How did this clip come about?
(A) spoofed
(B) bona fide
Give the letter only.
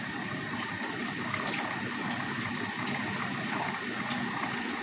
A